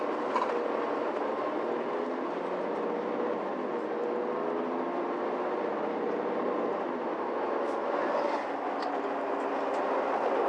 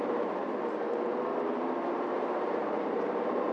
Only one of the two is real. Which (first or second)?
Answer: first